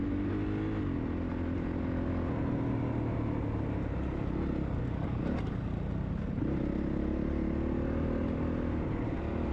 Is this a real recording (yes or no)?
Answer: yes